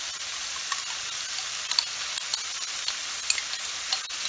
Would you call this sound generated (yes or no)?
no